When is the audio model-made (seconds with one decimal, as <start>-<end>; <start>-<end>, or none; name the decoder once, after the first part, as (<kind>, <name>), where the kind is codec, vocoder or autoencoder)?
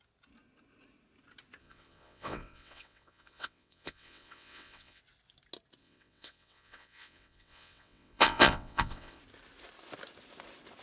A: 1.6-5.0 (vocoder, WaveNeXt); 5.8-9.2